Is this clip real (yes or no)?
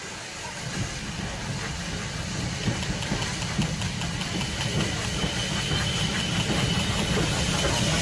yes